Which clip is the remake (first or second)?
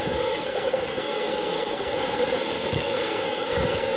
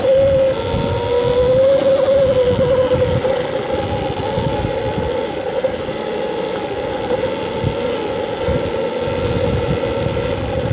first